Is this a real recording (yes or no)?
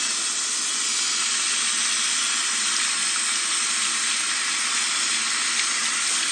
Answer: yes